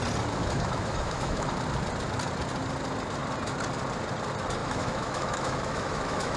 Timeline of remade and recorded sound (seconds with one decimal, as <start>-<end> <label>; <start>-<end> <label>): 0.0-0.4 recorded; 0.4-1.5 remade; 1.5-4.6 recorded; 4.6-6.4 remade